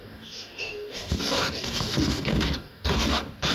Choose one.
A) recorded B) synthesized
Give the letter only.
B